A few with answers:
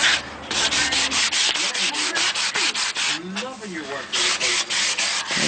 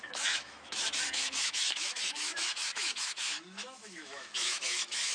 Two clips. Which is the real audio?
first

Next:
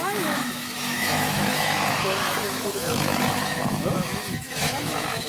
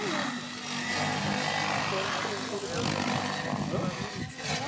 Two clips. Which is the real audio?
second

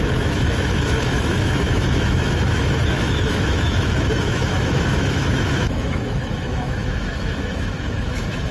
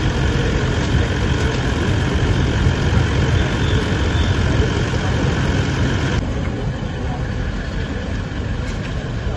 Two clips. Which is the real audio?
second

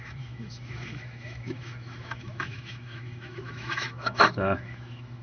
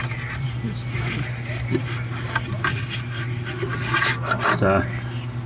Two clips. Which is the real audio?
second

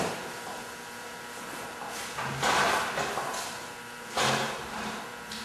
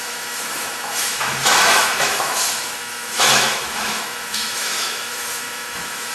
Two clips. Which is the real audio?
first